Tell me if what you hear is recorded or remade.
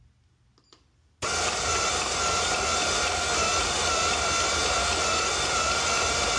recorded